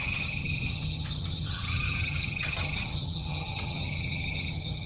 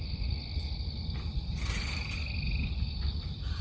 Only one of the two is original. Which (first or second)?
second